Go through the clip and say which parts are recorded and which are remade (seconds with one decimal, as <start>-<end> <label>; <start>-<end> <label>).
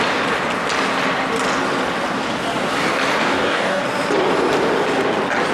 0.0-3.2 recorded; 3.2-3.8 remade; 3.8-5.5 recorded